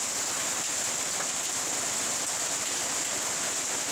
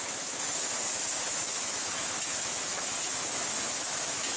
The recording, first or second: first